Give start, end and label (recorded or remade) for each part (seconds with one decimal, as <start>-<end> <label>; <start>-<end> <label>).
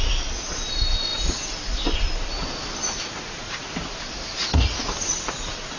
0.0-5.8 recorded